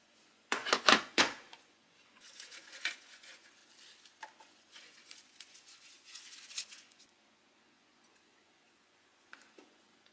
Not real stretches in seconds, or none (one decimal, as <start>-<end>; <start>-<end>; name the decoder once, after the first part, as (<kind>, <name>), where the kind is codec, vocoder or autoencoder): 0.0-3.6 (vocoder, Vocos); 4.4-10.1